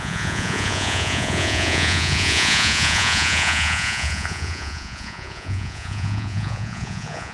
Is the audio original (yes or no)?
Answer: no